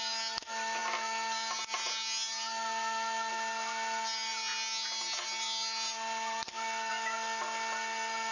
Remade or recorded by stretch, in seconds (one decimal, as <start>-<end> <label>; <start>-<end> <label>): 0.0-8.3 recorded

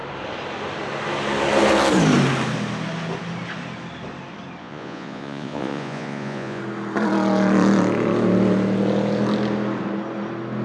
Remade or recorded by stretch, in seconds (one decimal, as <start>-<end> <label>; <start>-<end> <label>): 0.0-4.6 recorded; 4.6-6.6 remade; 6.6-10.6 recorded

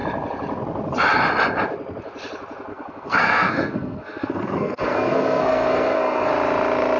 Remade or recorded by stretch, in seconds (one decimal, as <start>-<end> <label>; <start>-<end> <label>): 0.0-2.7 recorded; 2.7-6.3 remade; 6.3-7.0 recorded

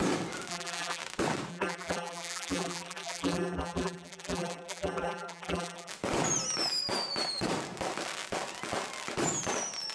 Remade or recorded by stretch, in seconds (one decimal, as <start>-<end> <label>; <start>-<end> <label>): 0.0-0.5 recorded; 0.5-1.0 remade; 1.0-1.5 recorded; 1.5-5.9 remade; 5.9-9.9 recorded

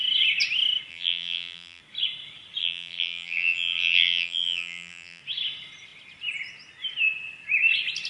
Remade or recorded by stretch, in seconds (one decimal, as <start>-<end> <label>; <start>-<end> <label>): 0.0-0.9 recorded; 0.9-1.8 remade; 1.8-2.6 recorded; 2.6-5.2 remade; 5.2-8.1 recorded

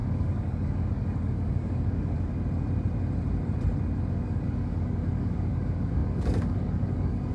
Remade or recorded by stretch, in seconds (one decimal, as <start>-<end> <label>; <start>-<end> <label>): 0.0-2.3 remade; 2.3-4.1 recorded; 4.1-7.3 remade

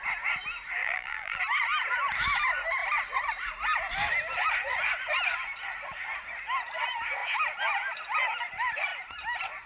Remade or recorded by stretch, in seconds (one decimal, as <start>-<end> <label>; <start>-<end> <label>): 0.0-0.8 recorded; 0.8-1.4 remade; 1.4-9.7 recorded

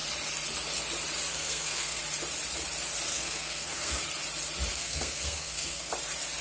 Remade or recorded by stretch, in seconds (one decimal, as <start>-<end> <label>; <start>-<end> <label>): 0.0-1.3 recorded; 1.3-2.0 remade; 2.0-3.1 recorded; 3.1-4.0 remade; 4.0-4.7 recorded; 4.7-5.9 remade; 5.9-6.4 recorded